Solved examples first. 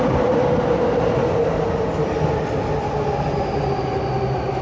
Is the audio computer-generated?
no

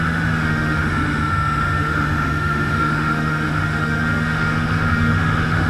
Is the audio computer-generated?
yes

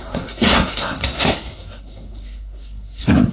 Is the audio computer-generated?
yes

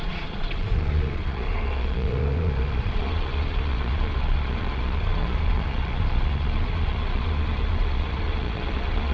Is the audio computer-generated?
yes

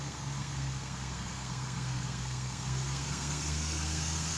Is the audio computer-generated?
yes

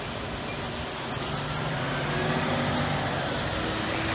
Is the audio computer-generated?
no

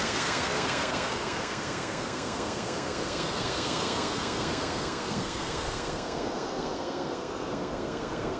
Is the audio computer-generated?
yes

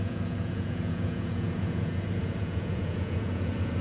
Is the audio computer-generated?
yes